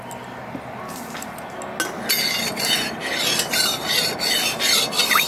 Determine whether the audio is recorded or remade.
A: recorded